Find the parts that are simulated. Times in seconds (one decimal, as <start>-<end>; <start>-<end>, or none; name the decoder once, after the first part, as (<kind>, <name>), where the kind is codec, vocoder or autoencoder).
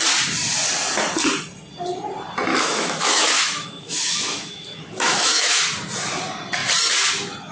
2.5-5.6 (autoencoder, DAC-VAE)